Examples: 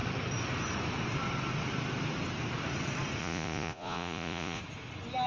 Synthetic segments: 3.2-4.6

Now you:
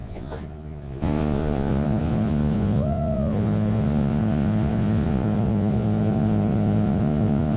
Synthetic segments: 0.0-7.6

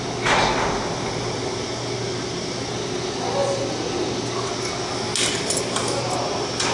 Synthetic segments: none